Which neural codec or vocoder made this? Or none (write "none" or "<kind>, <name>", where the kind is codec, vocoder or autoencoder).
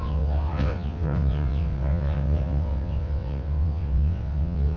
vocoder, WaveNeXt